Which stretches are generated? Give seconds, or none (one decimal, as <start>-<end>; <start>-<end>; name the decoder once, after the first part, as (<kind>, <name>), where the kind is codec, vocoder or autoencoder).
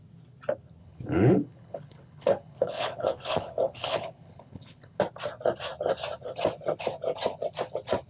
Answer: 0.8-5.0 (codec, HILCodec)